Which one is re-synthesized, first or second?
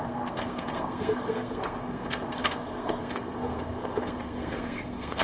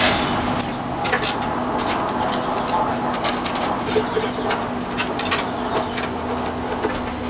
first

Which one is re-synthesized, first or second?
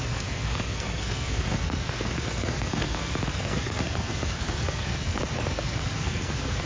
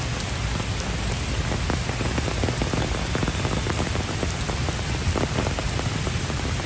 first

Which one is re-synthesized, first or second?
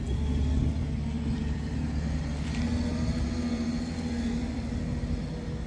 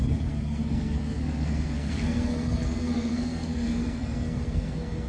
second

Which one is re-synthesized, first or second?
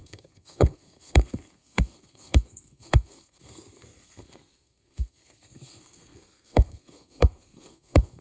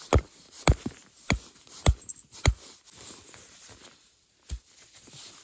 first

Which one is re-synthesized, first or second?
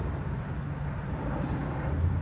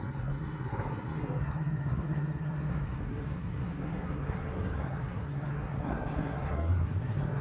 second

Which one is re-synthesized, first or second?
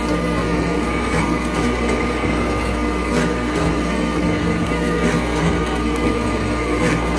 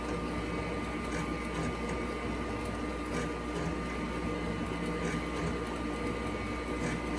first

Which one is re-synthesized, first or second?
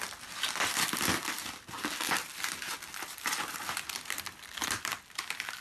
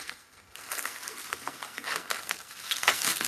second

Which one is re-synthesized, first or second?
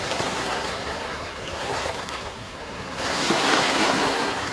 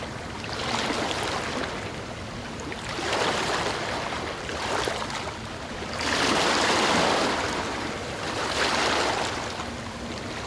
first